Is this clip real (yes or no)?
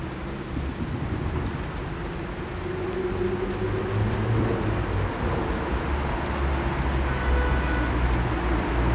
yes